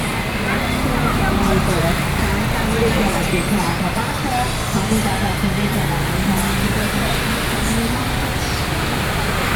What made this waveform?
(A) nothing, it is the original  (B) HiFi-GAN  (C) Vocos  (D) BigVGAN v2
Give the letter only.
A